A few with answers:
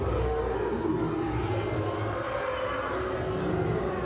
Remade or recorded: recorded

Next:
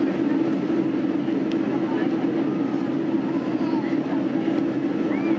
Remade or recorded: recorded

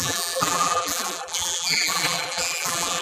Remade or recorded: remade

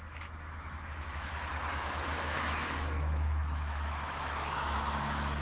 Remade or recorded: remade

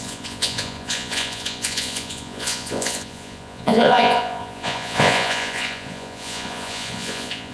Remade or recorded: remade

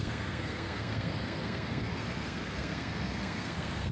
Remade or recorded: remade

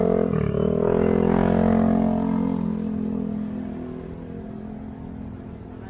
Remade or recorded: recorded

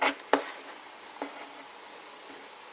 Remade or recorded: recorded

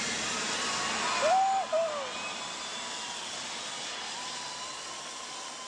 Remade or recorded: recorded